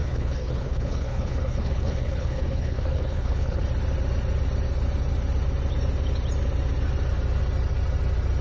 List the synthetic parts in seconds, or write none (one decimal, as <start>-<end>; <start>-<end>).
0.0-3.6